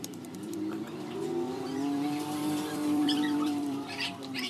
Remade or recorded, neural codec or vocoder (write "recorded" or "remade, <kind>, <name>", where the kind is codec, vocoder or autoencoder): remade, vocoder, BigVGAN v2